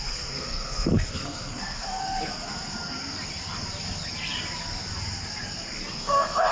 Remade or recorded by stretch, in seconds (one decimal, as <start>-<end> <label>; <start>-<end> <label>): 0.0-2.0 remade; 2.0-5.9 recorded; 5.9-6.5 remade